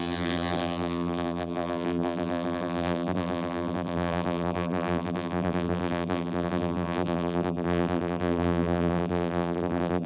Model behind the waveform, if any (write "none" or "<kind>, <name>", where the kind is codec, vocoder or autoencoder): vocoder, BigVGAN v2